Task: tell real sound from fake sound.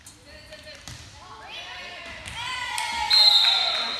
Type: real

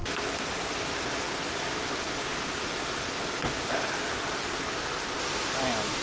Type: real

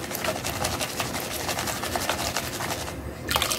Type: real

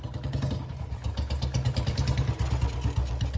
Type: real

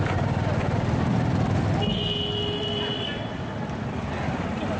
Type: real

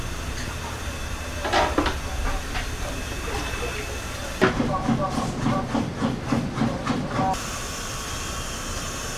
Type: real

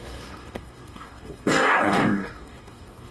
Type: fake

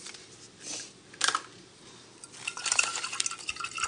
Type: real